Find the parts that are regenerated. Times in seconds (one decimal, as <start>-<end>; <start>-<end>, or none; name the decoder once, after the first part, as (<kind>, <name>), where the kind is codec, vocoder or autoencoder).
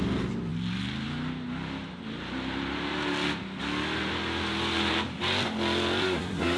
6.0-6.6 (codec, SNAC)